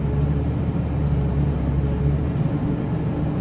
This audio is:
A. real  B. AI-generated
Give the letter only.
A